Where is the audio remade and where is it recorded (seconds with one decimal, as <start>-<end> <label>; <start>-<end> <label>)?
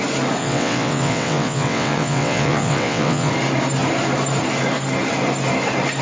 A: 0.0-0.4 recorded; 0.4-3.3 remade; 3.3-6.0 recorded